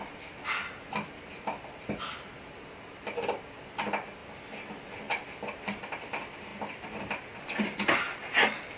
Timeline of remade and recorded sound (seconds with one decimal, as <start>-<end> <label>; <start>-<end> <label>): 0.0-8.8 recorded